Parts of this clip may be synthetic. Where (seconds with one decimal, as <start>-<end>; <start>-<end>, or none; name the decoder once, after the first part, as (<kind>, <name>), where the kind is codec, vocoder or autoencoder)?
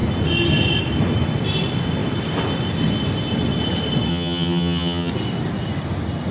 4.1-5.1 (vocoder, HiFi-GAN)